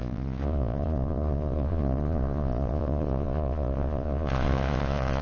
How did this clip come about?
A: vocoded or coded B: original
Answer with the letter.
A